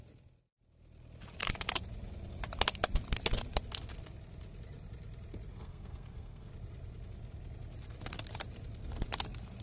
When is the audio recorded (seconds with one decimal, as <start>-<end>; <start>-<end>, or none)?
0.0-5.5; 6.5-9.6